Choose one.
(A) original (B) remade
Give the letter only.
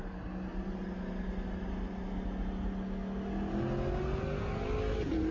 A